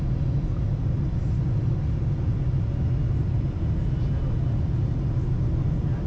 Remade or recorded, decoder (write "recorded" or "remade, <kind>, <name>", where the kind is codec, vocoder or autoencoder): recorded